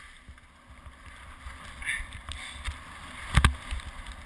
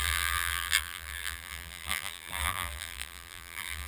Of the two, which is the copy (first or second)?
second